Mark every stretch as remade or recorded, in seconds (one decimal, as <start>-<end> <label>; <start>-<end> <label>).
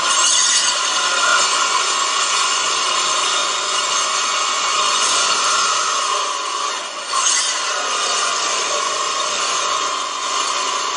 0.0-1.3 recorded; 1.3-2.7 remade; 2.7-3.4 recorded; 3.4-7.4 remade; 7.4-7.9 recorded; 7.9-11.0 remade